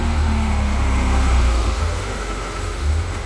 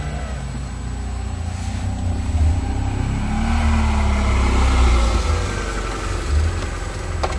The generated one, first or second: first